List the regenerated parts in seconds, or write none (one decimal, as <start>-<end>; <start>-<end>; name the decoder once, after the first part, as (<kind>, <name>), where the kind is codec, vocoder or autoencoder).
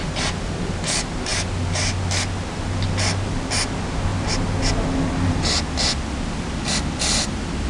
none